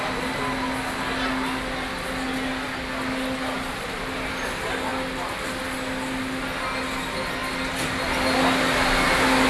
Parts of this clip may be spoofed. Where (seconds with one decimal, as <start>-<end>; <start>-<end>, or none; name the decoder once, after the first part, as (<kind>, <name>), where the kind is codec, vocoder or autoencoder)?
none